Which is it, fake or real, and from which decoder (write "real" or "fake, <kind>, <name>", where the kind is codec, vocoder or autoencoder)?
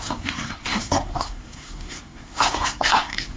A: fake, codec, SNAC